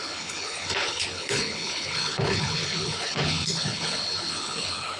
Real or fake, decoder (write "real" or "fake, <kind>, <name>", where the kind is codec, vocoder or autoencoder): fake, codec, HILCodec